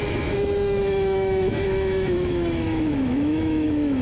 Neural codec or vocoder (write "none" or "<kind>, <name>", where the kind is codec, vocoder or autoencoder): autoencoder, DAC-VAE